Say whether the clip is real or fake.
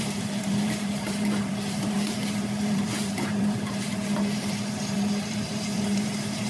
fake